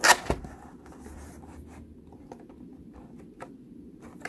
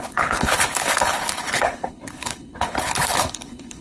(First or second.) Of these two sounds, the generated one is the second